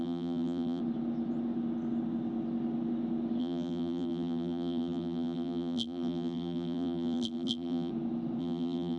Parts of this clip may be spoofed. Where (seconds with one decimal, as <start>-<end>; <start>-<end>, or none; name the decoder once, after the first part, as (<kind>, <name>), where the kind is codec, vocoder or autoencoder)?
0.0-0.8 (vocoder, BigVGAN v2); 3.4-7.9; 8.4-9.0